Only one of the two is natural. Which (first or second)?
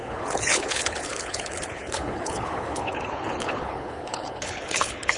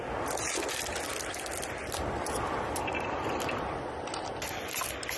second